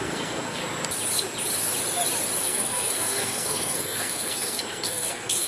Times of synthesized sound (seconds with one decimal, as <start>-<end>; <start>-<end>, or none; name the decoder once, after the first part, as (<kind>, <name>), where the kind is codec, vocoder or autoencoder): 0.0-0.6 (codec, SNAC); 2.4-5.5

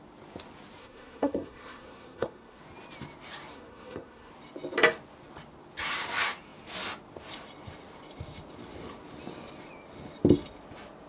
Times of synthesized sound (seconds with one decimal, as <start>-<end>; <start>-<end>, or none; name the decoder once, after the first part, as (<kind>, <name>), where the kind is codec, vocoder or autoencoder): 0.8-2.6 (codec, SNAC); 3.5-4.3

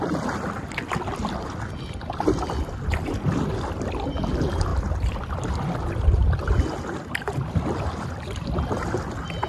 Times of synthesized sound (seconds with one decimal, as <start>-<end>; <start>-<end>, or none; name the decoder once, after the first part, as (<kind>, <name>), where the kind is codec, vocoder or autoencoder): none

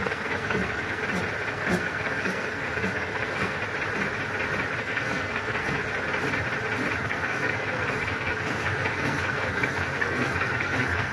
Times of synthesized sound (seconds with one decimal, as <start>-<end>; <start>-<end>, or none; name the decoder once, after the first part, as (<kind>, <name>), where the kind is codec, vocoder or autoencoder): 0.0-1.0 (codec, SNAC); 1.5-3.6; 4.8-5.8; 7.0-11.1